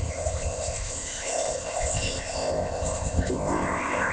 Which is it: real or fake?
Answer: fake